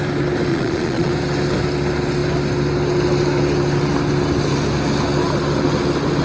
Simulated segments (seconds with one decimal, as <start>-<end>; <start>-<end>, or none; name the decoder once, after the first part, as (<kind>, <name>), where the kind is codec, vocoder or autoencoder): 0.5-1.1 (vocoder, Vocos)